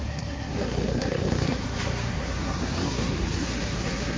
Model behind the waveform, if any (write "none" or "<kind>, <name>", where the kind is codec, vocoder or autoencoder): codec, SNAC